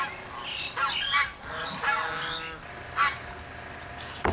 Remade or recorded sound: recorded